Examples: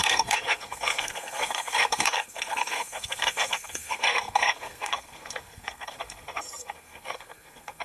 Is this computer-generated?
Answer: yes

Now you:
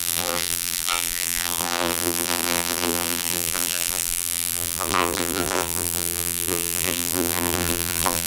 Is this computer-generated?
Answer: yes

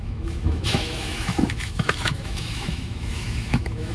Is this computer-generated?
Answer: yes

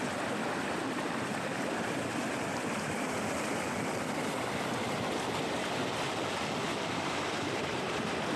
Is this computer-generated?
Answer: yes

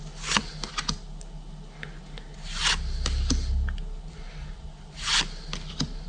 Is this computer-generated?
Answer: no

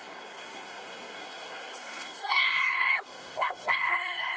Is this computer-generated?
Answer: yes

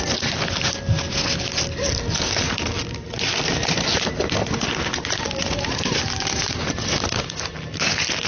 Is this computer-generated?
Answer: no